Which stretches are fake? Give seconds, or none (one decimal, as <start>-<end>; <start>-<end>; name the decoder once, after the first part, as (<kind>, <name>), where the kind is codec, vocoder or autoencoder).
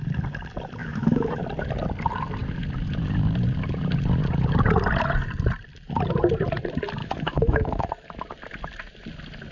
0.8-1.4 (autoencoder, DAC-VAE); 7.0-7.9